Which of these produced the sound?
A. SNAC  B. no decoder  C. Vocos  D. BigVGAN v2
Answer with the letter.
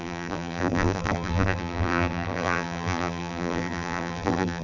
D